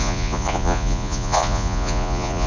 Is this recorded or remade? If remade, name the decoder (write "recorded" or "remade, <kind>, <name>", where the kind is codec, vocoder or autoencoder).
remade, vocoder, Vocos